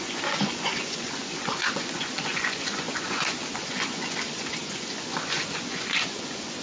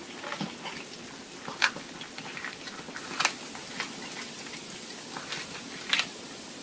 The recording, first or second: second